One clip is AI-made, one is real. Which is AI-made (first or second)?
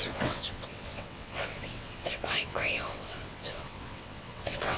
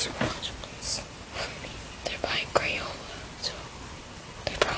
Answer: first